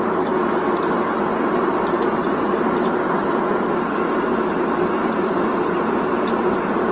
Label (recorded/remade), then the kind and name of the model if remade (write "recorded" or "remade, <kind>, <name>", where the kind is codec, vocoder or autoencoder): recorded